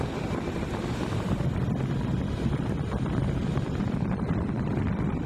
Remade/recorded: recorded